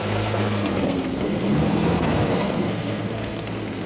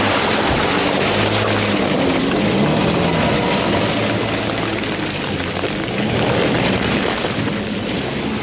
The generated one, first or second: first